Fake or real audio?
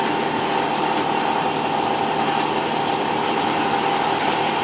real